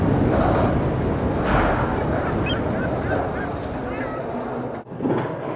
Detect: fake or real real